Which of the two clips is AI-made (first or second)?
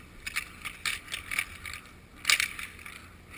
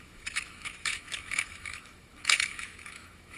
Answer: second